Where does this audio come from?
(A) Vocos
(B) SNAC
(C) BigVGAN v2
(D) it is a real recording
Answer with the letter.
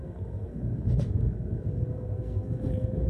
B